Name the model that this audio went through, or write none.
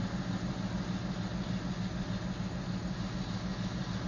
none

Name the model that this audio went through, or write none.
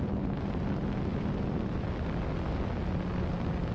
none